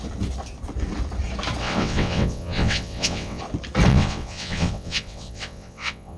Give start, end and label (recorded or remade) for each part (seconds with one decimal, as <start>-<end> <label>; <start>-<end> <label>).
0.0-1.6 recorded; 1.6-3.4 remade; 3.4-3.9 recorded; 3.9-6.2 remade

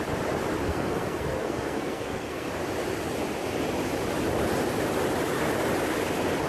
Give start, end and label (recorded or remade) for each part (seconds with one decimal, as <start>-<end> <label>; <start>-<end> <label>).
0.0-0.6 recorded; 0.6-2.5 remade; 2.5-6.5 recorded

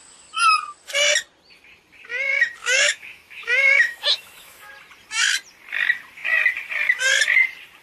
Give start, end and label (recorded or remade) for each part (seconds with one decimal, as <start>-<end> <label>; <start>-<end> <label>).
0.0-2.6 recorded; 2.6-4.7 remade; 4.7-7.8 recorded

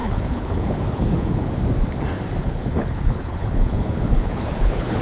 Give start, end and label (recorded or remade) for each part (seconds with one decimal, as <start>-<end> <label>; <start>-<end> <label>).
0.0-1.6 remade; 1.6-2.4 recorded; 2.4-5.0 remade

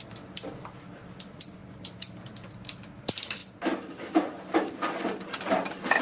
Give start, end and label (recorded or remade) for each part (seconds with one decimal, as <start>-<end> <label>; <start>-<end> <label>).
0.0-1.6 recorded; 1.6-2.1 remade; 2.1-6.0 recorded

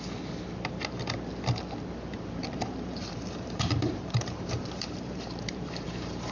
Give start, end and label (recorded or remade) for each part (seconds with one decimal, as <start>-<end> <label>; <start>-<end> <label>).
0.0-2.1 recorded; 2.1-6.3 remade

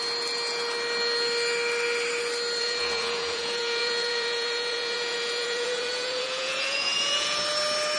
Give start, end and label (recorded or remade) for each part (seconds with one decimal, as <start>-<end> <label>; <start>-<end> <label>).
0.0-2.6 recorded; 2.6-7.4 remade; 7.4-8.0 recorded

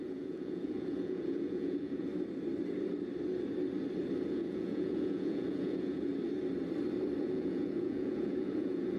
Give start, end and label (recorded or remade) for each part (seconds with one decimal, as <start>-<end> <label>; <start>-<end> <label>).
0.0-2.1 remade; 2.1-4.3 recorded; 4.3-6.1 remade; 6.1-7.2 recorded; 7.2-9.0 remade